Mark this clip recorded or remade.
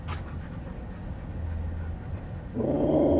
recorded